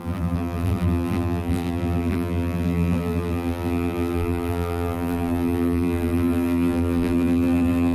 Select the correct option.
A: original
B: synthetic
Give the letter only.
B